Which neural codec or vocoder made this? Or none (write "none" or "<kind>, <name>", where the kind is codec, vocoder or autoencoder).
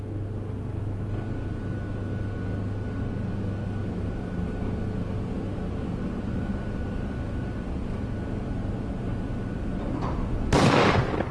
none